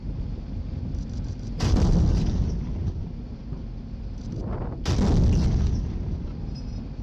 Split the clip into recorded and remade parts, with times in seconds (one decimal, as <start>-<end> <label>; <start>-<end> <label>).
0.0-4.2 remade; 4.2-7.0 recorded